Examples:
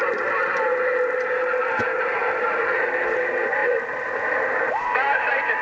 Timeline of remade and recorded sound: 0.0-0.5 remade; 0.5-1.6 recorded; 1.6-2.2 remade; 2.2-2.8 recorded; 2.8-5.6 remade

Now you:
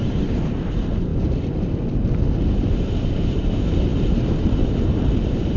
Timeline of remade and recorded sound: 0.0-1.1 remade; 1.1-2.7 recorded; 2.7-5.6 remade

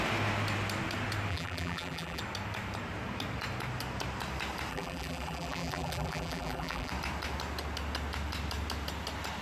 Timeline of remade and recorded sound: 0.0-1.3 recorded; 1.3-2.2 remade; 2.2-4.7 recorded; 4.7-6.9 remade; 6.9-9.4 recorded

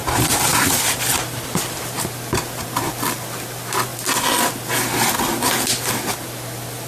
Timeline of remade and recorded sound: 0.0-3.9 recorded; 3.9-5.9 remade; 5.9-6.9 recorded

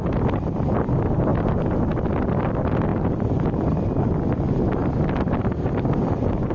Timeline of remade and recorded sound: 0.0-2.9 recorded; 2.9-3.6 remade; 3.6-6.5 recorded